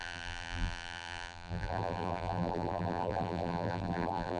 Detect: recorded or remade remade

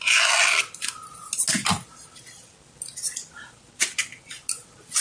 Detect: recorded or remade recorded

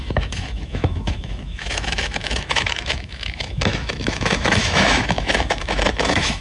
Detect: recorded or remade remade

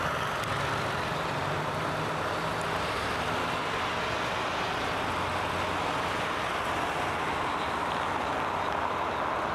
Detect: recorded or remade recorded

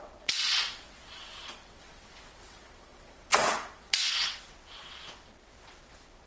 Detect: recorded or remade remade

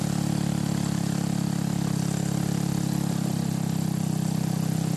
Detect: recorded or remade recorded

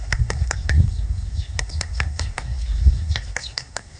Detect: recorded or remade remade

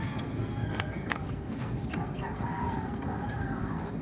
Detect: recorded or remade remade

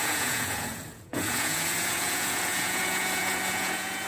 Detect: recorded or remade remade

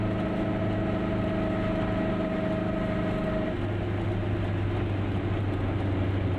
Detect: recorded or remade recorded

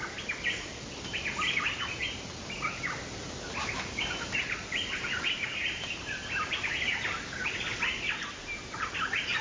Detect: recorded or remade recorded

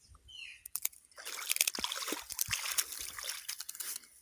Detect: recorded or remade recorded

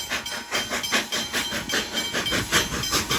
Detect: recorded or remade recorded